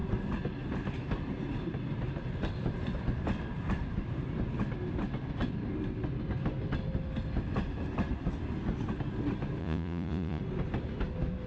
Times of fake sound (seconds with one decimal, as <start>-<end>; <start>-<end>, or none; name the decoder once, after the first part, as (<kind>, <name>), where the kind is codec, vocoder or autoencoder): 9.6-10.4 (vocoder, Vocos)